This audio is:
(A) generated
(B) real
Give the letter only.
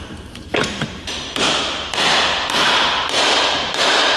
A